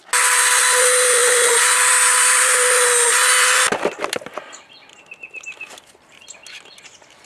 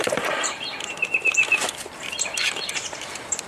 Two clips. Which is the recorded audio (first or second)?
first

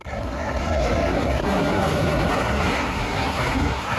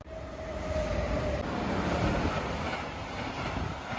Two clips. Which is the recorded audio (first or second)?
second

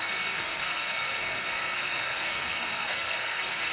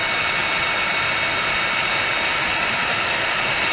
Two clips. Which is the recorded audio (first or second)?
second